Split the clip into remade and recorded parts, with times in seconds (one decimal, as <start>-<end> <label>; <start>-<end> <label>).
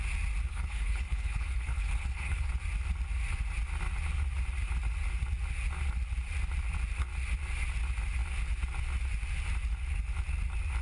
0.0-0.5 recorded; 0.5-2.5 remade; 2.5-10.8 recorded